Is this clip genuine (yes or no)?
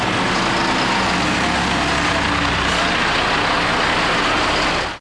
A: yes